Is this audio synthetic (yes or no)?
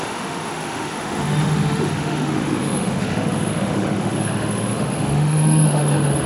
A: yes